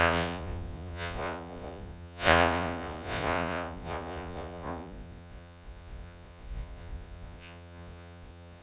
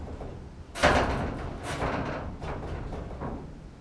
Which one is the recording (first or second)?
second